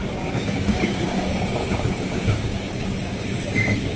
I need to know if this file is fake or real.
fake